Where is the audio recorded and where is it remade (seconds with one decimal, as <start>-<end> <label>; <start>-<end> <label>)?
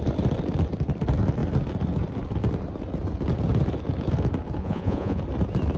0.0-4.6 recorded; 4.6-5.2 remade; 5.2-5.8 recorded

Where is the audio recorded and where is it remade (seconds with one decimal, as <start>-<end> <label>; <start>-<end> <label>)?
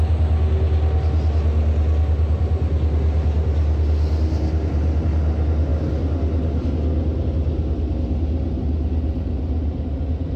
0.0-10.4 recorded